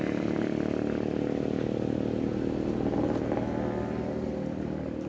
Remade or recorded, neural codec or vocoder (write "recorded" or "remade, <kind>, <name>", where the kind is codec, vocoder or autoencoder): recorded